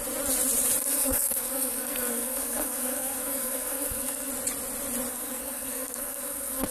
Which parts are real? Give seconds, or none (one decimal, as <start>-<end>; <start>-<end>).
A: 0.0-0.8; 4.3-5.1